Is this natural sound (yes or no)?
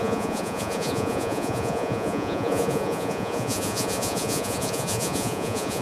no